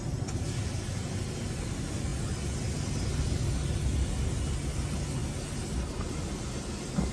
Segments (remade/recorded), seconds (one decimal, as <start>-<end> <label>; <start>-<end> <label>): 0.0-7.1 recorded